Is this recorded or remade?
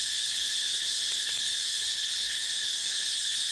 remade